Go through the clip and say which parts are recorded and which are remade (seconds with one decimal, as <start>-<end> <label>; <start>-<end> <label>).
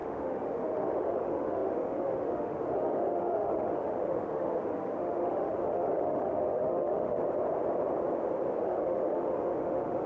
0.0-7.2 remade; 7.2-8.6 recorded; 8.6-10.1 remade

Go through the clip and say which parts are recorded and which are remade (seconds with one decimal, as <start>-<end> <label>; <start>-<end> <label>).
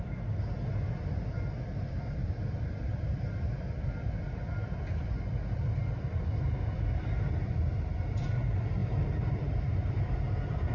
0.0-10.7 recorded